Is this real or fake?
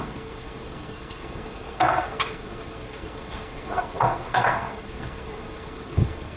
fake